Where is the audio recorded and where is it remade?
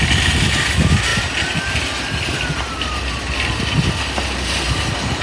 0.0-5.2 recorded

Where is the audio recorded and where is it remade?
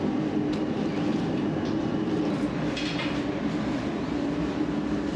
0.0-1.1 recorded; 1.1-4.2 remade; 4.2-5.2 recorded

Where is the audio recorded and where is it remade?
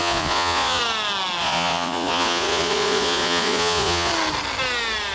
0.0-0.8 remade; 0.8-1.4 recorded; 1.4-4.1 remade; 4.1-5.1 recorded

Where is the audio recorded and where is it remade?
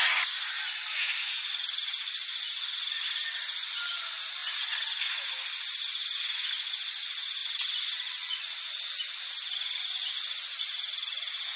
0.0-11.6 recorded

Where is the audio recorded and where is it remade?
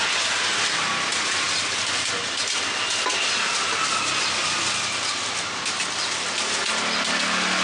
0.0-7.6 recorded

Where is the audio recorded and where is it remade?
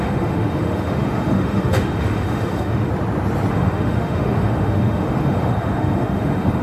0.0-2.9 remade; 2.9-3.5 recorded; 3.5-6.6 remade